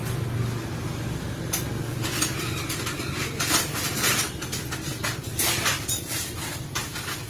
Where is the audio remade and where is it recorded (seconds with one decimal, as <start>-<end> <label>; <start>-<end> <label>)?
0.0-1.9 recorded; 1.9-7.3 remade